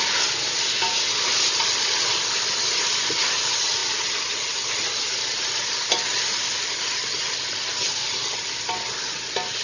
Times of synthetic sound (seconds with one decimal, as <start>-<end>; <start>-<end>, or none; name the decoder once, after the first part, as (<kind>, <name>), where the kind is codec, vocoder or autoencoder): none